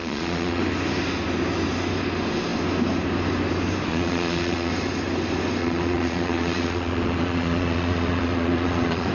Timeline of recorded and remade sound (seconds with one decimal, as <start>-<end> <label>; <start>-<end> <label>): 0.0-0.6 remade; 0.6-3.9 recorded; 3.9-4.7 remade; 4.7-5.6 recorded; 5.6-9.1 remade